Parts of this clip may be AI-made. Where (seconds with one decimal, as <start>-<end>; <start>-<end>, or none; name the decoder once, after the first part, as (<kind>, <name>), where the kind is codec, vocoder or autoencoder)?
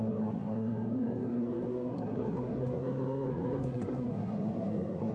0.0-5.1 (codec, SNAC)